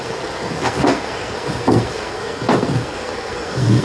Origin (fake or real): fake